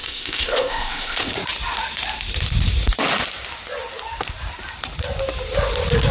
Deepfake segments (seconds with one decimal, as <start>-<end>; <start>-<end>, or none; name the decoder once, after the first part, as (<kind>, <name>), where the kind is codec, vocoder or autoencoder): 0.0-1.3 (codec, ZipCodec)